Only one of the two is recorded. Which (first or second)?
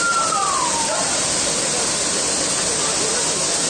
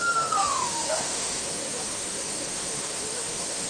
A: first